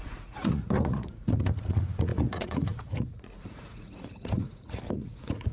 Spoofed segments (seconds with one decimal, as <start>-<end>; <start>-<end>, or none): 0.0-5.5